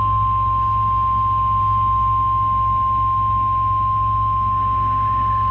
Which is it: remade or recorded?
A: recorded